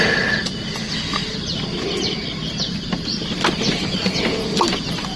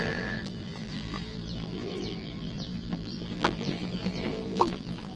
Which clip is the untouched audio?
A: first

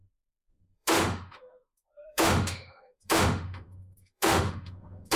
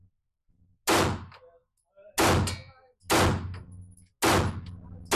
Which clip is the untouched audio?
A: second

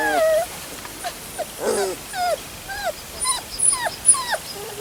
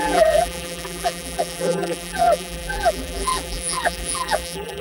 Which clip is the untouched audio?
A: first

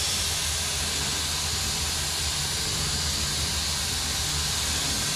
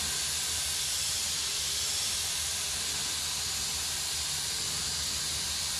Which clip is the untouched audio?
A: first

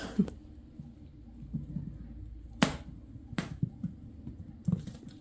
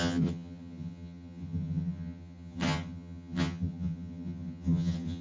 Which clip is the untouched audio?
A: first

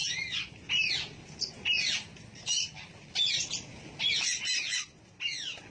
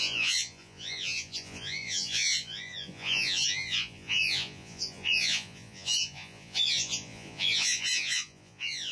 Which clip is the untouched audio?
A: first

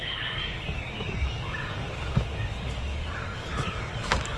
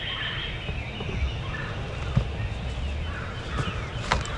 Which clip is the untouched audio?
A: second